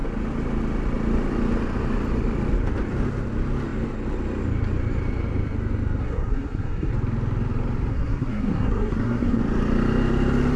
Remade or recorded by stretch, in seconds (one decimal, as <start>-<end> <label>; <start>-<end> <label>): 0.0-6.0 recorded; 6.0-6.9 remade; 6.9-7.9 recorded; 7.9-9.4 remade; 9.4-10.6 recorded